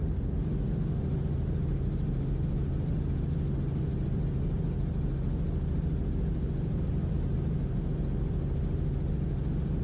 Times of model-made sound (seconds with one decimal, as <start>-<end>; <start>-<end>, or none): none